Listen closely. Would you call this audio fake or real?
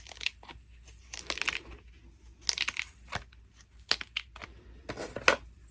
real